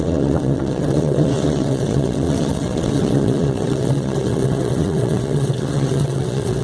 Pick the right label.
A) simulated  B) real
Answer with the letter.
A